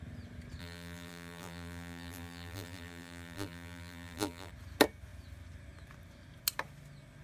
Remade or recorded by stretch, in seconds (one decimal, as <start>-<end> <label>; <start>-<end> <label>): 0.0-0.6 recorded; 0.6-4.5 remade; 4.5-7.2 recorded